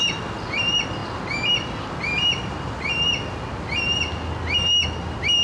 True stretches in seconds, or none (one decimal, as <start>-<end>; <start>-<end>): 0.0-5.4